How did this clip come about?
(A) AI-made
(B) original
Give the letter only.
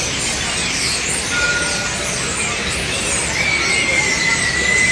B